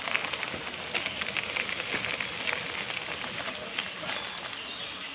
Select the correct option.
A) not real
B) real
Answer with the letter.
B